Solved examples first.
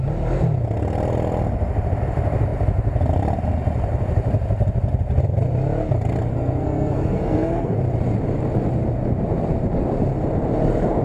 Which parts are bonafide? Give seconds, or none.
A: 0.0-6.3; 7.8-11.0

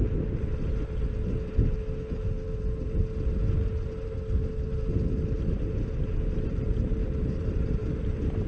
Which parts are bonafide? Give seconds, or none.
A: 0.0-8.5

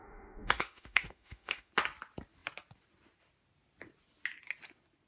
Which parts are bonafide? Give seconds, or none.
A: 1.7-5.1

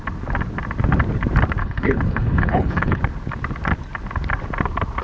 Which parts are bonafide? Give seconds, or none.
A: 0.0-1.6; 3.0-5.0